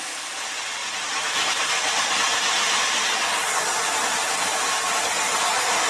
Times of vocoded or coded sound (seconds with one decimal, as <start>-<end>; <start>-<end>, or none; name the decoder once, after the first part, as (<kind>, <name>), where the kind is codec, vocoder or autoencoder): none